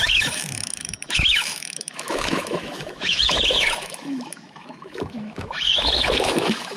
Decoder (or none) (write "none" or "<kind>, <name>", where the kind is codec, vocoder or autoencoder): autoencoder, DAC-VAE